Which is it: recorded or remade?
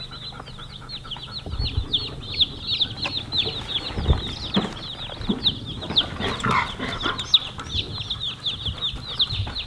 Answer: recorded